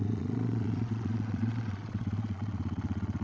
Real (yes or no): no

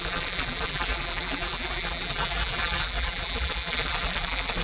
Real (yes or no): no